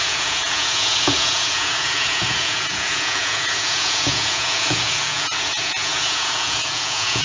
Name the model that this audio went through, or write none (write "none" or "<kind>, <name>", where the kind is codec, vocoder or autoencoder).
vocoder, Vocos